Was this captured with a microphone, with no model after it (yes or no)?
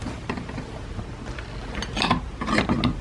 yes